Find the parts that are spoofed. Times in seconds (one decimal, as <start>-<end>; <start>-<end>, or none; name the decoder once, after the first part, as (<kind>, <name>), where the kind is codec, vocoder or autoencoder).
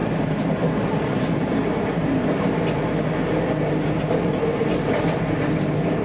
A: 0.0-2.6 (vocoder, BigVGAN v2)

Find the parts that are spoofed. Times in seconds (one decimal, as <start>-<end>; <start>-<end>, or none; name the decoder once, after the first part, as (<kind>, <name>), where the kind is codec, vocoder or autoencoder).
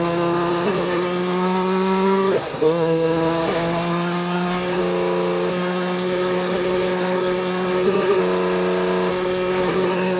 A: 0.0-4.8 (codec, SNAC); 5.5-8.2; 9.1-10.2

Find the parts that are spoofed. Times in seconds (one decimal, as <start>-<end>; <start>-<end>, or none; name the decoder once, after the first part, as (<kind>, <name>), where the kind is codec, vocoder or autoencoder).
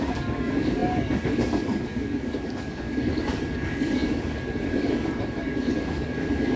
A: 0.0-6.6 (codec, DAC)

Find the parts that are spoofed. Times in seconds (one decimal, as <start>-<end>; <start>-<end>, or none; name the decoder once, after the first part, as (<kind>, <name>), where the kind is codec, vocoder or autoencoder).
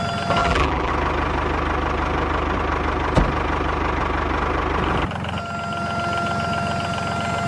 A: 0.4-0.9 (vocoder, BigVGAN v2)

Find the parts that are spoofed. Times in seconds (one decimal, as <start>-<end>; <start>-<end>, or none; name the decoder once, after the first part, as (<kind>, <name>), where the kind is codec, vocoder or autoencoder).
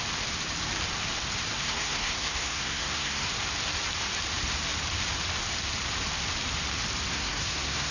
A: 1.5-3.3 (codec, SNAC); 7.1-7.9